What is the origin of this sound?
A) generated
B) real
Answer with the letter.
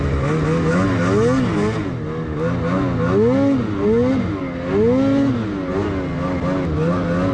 B